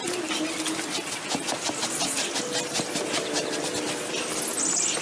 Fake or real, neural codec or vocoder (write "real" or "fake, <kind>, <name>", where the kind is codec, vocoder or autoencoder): real